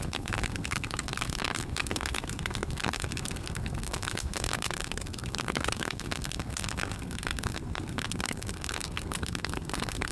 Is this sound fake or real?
fake